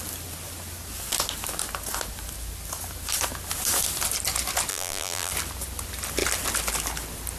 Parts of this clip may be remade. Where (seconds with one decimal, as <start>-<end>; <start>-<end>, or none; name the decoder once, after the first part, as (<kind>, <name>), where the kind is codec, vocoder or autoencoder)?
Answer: 4.7-5.3 (vocoder, BigVGAN v2)